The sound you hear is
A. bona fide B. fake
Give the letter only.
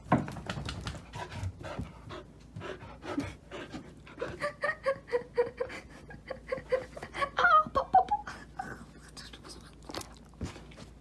A